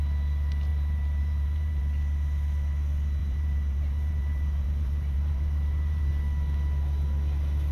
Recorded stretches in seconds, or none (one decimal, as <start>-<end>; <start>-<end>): 0.0-0.7; 1.8-3.2; 6.1-7.7